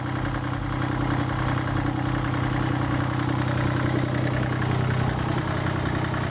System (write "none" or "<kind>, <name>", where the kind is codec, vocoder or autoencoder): none